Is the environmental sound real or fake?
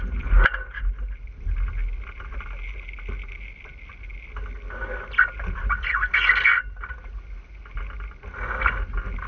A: real